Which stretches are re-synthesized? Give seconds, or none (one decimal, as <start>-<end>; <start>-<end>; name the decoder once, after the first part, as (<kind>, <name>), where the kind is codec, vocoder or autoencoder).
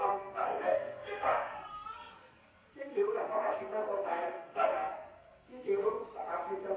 0.0-6.3 (codec, SNAC)